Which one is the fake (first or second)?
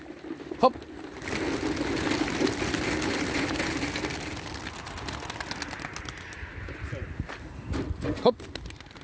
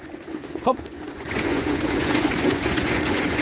second